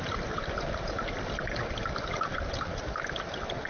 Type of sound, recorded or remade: recorded